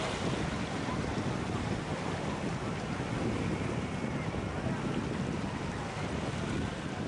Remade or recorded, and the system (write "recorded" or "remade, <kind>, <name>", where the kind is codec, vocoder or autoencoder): recorded